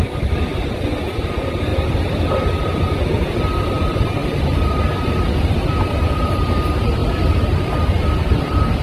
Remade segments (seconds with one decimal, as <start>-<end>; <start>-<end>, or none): 7.0-8.8